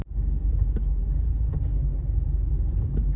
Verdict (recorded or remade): recorded